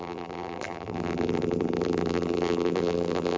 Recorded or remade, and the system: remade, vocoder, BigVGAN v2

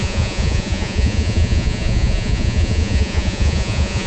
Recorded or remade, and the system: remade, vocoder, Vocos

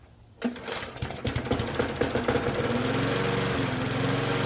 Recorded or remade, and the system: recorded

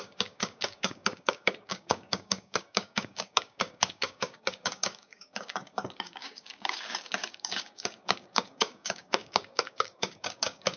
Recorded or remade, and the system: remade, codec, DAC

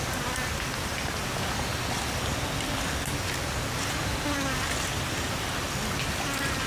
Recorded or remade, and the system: recorded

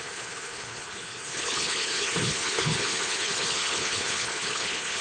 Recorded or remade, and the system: remade, codec, HILCodec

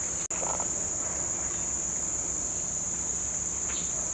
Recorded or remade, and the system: recorded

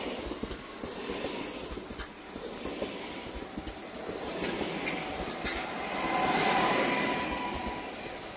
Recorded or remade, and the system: recorded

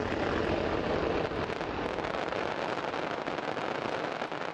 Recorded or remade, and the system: recorded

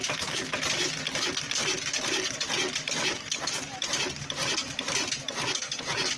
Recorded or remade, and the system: recorded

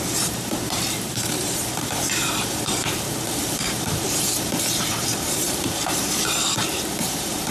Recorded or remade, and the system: remade, vocoder, BigVGAN v2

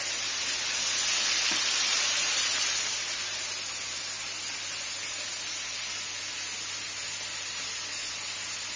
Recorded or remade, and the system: recorded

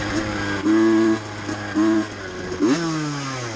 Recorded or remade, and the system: recorded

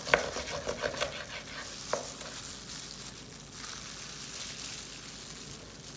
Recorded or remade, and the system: recorded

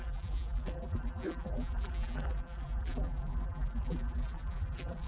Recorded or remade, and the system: remade, vocoder, BigVGAN v2